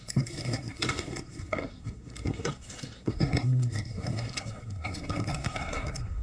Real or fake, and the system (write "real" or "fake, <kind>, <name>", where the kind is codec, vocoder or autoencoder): fake, codec, SNAC